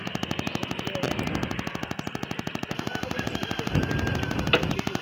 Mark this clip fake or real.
real